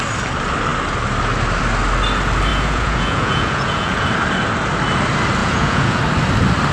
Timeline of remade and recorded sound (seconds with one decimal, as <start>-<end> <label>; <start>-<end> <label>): 0.0-2.5 recorded; 2.5-4.1 remade; 4.1-5.4 recorded; 5.4-6.0 remade; 6.0-6.7 recorded